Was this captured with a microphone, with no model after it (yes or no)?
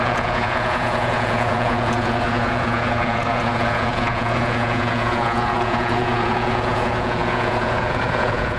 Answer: no